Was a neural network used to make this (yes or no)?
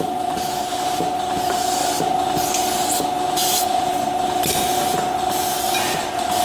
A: no